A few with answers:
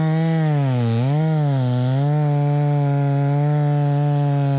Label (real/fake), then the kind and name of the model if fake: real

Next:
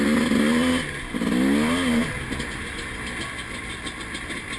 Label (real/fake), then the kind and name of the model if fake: real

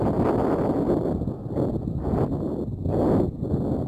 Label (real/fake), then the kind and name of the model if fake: real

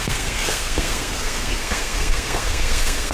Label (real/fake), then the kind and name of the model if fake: fake, codec, SNAC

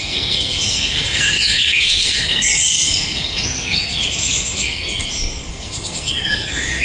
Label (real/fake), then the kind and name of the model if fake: fake, codec, SNAC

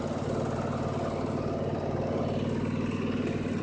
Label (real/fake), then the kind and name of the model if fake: real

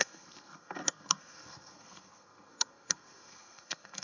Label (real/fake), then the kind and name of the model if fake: fake, codec, SNAC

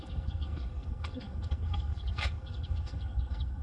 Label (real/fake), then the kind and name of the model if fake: fake, codec, SNAC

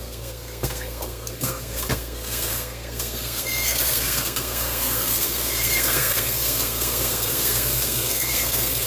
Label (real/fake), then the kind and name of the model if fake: fake, codec, SNAC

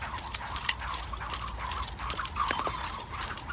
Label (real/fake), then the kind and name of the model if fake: real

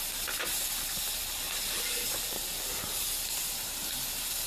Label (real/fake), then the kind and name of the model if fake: real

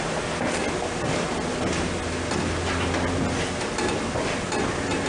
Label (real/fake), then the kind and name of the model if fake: real